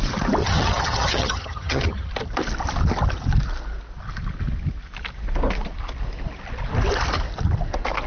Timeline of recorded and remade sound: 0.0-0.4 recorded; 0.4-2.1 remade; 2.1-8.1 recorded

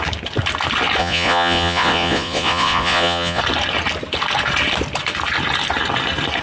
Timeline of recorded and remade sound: 0.0-1.0 recorded; 1.0-3.4 remade; 3.4-6.4 recorded

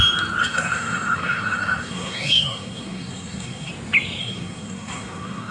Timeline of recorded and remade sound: 0.0-0.4 recorded; 0.4-3.7 remade; 3.7-4.2 recorded; 4.2-5.5 remade

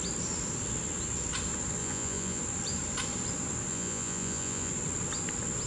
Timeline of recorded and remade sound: 0.0-1.8 recorded; 1.8-2.4 remade; 2.4-3.7 recorded; 3.7-4.7 remade; 4.7-5.7 recorded

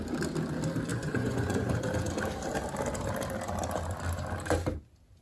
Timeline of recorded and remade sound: 0.0-0.9 recorded; 0.9-1.7 remade; 1.7-5.2 recorded

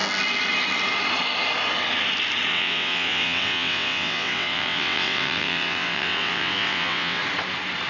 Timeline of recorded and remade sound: 0.0-2.5 recorded; 2.5-7.2 remade; 7.2-7.9 recorded

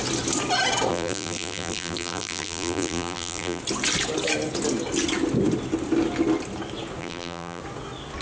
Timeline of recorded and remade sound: 0.0-0.9 recorded; 0.9-3.6 remade; 3.6-7.0 recorded; 7.0-7.6 remade; 7.6-8.2 recorded

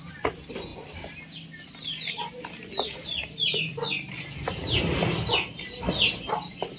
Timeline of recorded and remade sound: 0.0-6.8 recorded